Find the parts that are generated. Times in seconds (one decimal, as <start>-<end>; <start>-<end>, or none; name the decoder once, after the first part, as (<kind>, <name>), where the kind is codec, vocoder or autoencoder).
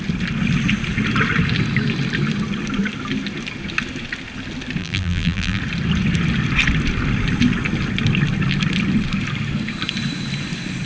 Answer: 4.8-5.6 (vocoder, BigVGAN v2)